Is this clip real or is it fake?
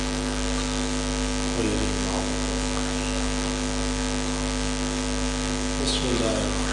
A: real